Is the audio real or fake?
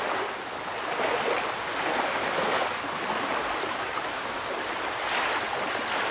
real